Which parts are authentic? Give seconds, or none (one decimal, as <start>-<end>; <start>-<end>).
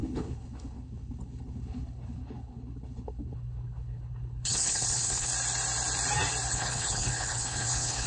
5.3-6.5